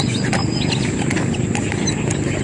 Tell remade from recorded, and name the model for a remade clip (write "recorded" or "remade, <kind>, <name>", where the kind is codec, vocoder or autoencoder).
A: recorded